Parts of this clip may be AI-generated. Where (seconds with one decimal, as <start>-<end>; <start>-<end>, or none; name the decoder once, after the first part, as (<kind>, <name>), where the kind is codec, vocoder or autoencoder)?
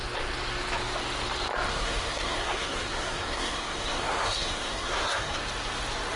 1.7-5.4 (codec, SNAC)